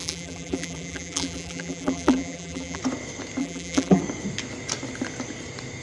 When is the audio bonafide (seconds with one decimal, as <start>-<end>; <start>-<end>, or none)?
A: 2.8-3.4; 4.0-5.8